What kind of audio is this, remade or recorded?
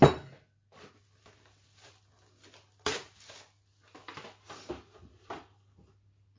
recorded